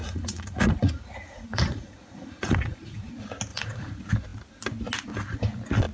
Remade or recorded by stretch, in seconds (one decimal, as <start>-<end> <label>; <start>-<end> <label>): 0.0-3.1 remade; 3.1-3.5 recorded; 3.5-4.1 remade; 4.1-5.9 recorded